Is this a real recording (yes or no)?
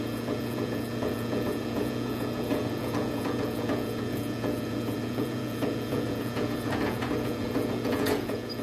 no